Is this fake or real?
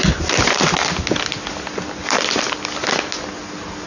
real